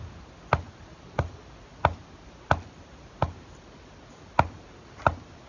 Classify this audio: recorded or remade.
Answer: recorded